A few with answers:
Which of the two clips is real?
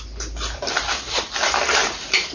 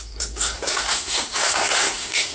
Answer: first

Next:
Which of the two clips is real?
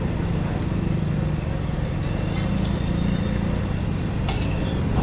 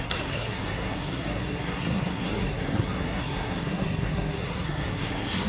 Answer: first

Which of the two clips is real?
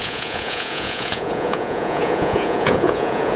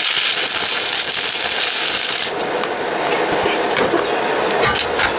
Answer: second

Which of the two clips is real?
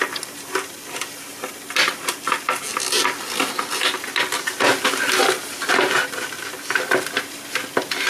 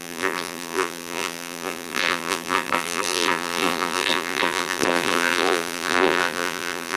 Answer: first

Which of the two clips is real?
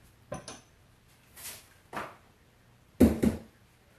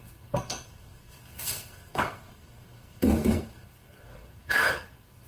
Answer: first